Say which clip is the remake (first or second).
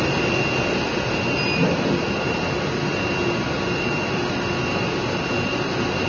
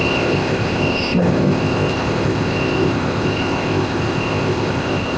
second